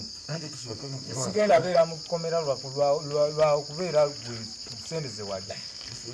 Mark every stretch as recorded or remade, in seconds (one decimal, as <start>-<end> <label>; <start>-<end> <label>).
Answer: 0.0-1.8 remade; 1.8-5.5 recorded; 5.5-6.1 remade